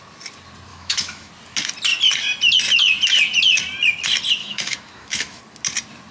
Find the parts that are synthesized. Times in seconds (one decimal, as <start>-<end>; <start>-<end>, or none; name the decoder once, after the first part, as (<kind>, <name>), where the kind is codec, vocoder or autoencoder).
0.7-1.3 (autoencoder, DAC-VAE); 4.4-5.4